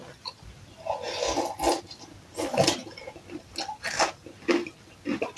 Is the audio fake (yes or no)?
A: no